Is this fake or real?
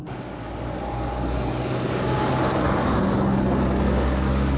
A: fake